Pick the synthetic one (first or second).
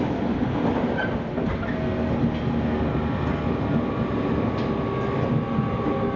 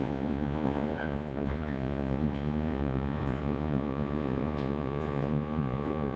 second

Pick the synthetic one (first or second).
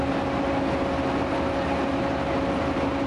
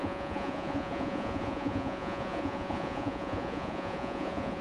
second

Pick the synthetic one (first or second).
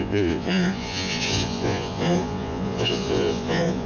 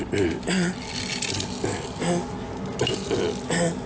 first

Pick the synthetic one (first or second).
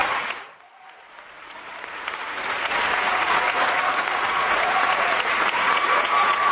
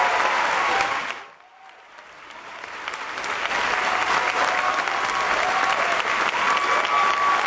first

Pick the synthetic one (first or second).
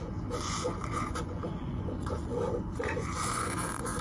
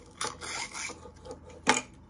first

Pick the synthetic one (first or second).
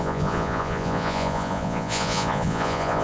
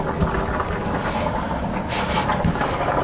first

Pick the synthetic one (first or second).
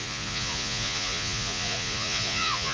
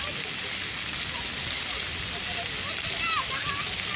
first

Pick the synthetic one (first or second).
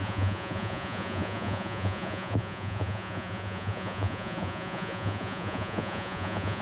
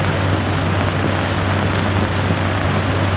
first